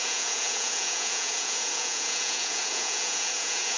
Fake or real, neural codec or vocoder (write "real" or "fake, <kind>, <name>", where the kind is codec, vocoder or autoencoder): fake, vocoder, Vocos